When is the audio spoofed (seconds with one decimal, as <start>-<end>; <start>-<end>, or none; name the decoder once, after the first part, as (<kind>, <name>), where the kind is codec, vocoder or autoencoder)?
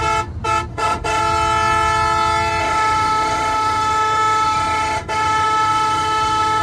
0.7-1.2 (autoencoder, DAC-VAE); 2.6-6.6